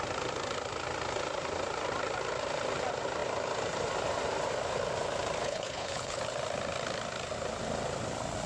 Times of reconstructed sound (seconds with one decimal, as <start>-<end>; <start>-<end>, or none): 5.4-6.2